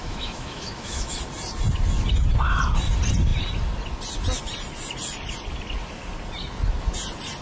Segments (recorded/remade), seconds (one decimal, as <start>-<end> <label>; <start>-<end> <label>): 0.0-1.2 remade; 1.2-7.4 recorded